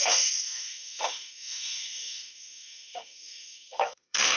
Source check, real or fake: fake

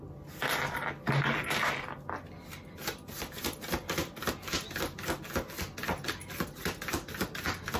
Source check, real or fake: real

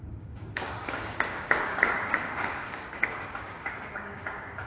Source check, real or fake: fake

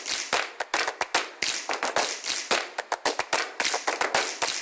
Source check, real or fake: real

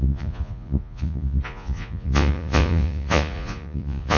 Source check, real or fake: fake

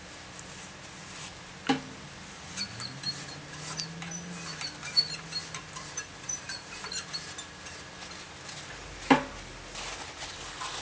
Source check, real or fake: real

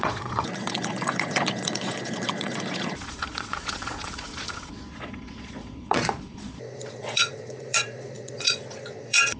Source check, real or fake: fake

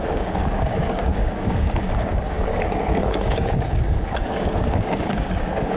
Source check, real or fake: fake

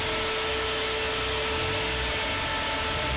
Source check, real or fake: real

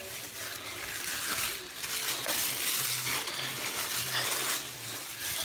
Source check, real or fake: real